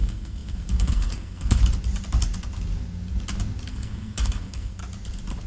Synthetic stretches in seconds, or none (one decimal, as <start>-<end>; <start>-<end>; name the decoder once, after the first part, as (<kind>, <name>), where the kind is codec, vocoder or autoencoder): 0.0-1.6 (codec, SNAC); 3.7-4.8